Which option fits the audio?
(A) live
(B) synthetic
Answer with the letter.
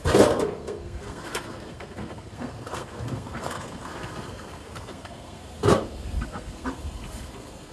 B